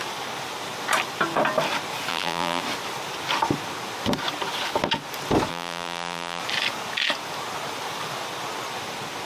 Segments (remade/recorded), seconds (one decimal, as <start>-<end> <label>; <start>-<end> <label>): 0.0-2.1 recorded; 2.1-2.6 remade; 2.6-5.5 recorded; 5.5-6.4 remade; 6.4-9.3 recorded